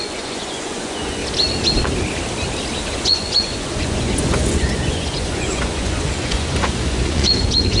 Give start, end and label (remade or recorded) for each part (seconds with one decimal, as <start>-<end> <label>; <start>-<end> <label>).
0.0-1.2 remade; 1.2-2.9 recorded; 2.9-7.8 remade